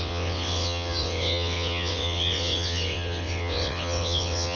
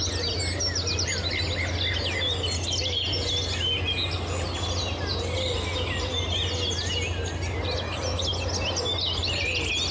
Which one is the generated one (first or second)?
first